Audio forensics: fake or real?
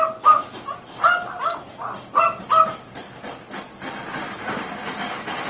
real